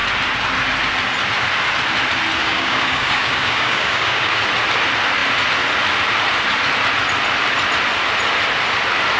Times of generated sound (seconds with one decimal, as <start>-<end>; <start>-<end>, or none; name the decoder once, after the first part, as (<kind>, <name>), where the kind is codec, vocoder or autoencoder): 2.4-4.4 (codec, DAC)